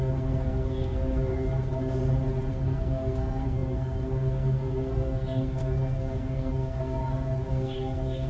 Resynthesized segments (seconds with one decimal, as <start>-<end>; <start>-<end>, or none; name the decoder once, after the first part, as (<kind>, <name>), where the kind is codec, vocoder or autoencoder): 0.0-2.0 (codec, SNAC); 2.5-7.0; 7.5-8.3